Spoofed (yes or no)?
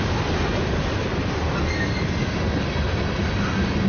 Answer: no